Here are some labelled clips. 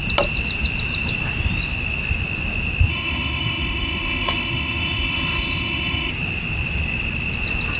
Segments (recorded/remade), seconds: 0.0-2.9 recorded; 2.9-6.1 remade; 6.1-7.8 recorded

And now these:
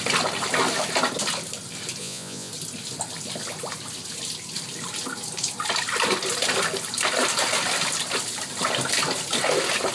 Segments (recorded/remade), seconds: 0.0-2.0 recorded; 2.0-2.5 remade; 2.5-9.9 recorded

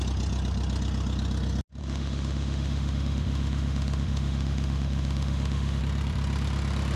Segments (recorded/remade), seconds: 0.0-1.8 recorded; 1.8-5.8 remade; 5.8-7.0 recorded

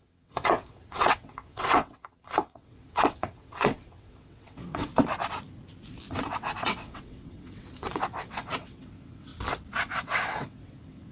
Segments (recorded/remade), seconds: 0.0-4.9 remade; 4.9-6.1 recorded; 6.1-9.3 remade; 9.3-10.0 recorded; 10.0-11.1 remade